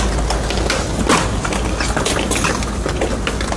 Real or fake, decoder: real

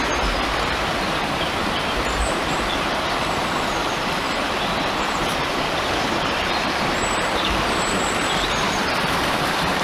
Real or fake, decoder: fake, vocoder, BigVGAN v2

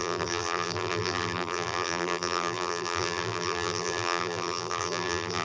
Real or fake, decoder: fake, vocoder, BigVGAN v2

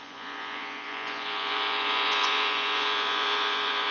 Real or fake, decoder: fake, vocoder, Vocos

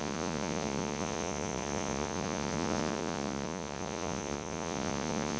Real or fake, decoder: fake, vocoder, Vocos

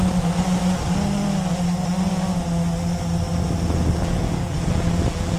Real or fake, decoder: real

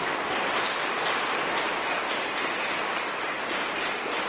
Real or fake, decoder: real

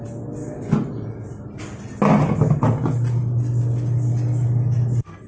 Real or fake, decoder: real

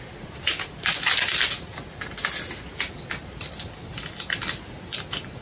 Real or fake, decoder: real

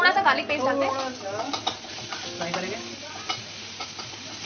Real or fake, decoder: real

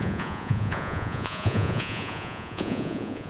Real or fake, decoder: fake, vocoder, Vocos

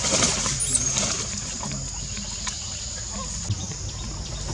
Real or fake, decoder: real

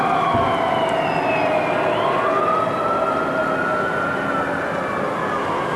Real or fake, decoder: real